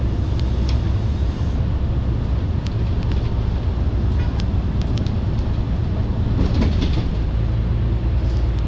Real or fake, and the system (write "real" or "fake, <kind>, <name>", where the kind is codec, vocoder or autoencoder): real